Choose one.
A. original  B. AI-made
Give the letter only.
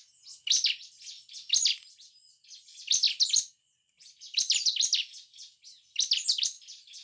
A